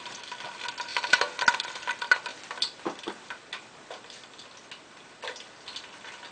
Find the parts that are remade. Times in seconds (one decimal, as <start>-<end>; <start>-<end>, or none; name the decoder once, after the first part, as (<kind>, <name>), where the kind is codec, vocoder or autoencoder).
0.9-1.9 (vocoder, BigVGAN v2); 2.3-3.4